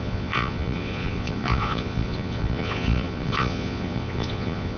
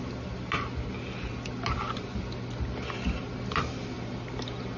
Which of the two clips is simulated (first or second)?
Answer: first